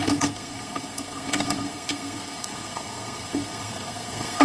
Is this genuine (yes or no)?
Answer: no